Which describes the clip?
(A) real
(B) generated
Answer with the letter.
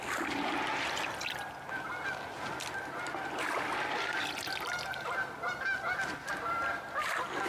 A